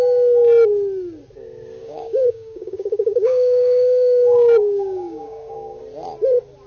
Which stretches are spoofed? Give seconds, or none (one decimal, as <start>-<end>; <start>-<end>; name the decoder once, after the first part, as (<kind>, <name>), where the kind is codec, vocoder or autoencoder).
1.8-5.8 (codec, DAC)